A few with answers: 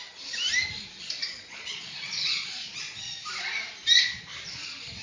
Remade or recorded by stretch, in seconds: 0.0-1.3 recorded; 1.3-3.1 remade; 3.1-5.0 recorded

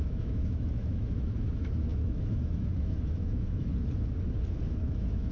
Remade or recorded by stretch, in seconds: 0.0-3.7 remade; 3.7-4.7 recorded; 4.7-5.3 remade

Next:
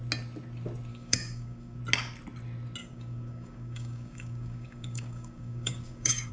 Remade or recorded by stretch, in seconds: 0.0-0.9 recorded; 0.9-1.8 remade; 1.8-2.8 recorded; 2.8-6.3 remade

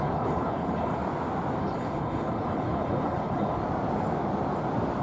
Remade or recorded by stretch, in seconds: 0.0-1.0 remade; 1.0-1.6 recorded; 1.6-3.6 remade; 3.6-5.0 recorded